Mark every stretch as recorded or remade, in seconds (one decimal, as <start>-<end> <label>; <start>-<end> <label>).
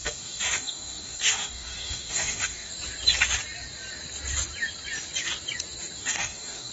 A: 0.0-2.7 remade; 2.7-6.0 recorded; 6.0-6.7 remade